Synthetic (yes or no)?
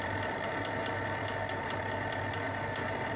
yes